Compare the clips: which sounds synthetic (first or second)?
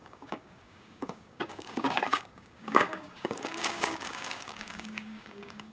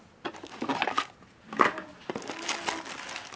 first